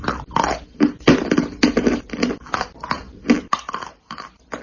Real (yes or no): yes